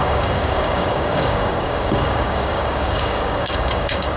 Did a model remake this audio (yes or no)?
yes